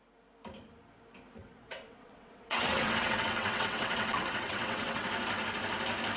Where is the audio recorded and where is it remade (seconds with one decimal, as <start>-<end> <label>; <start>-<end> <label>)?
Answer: 0.0-1.4 recorded; 1.4-5.1 remade; 5.1-6.2 recorded